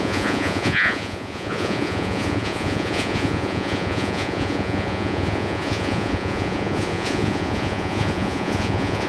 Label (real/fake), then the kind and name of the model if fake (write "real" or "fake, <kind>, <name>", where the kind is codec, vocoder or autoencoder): fake, vocoder, Vocos